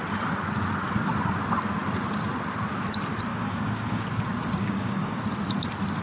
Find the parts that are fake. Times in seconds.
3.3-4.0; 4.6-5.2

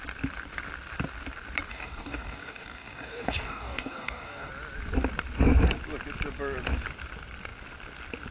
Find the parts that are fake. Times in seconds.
1.7-4.5